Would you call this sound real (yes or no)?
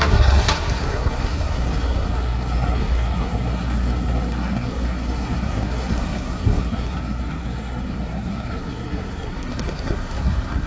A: no